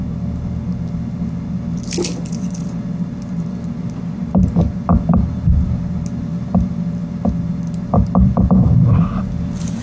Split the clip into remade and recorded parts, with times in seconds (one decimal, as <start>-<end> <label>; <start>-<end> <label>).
0.0-9.8 recorded

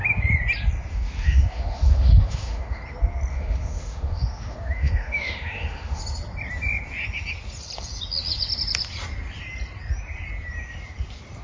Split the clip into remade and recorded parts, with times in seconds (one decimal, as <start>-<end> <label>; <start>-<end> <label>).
0.0-0.9 recorded; 0.9-2.8 remade; 2.8-3.3 recorded; 3.3-6.0 remade; 6.0-11.4 recorded

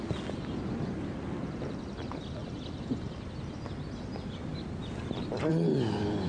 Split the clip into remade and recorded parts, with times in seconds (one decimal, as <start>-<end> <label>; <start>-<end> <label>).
0.0-6.3 recorded

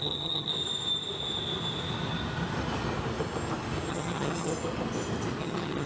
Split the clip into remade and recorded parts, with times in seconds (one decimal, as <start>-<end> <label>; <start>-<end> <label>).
0.0-0.5 remade; 0.5-3.9 recorded; 3.9-4.5 remade; 4.5-5.4 recorded; 5.4-5.9 remade